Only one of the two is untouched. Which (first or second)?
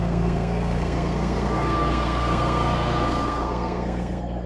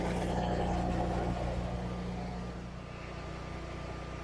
second